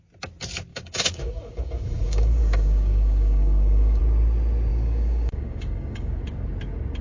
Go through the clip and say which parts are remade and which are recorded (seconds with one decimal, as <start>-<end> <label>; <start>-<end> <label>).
0.0-0.7 recorded; 0.7-4.0 remade; 4.0-4.7 recorded; 4.7-6.2 remade; 6.2-7.0 recorded